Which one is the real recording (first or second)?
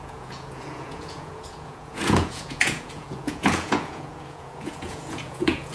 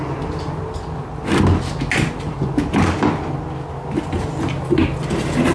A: second